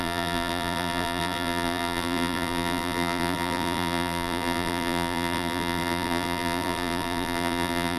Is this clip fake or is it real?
fake